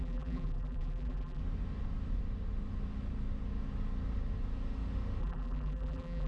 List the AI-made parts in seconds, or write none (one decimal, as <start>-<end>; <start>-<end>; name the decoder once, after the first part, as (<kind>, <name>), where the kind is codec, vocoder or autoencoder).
0.0-1.4 (vocoder, BigVGAN v2); 5.2-6.3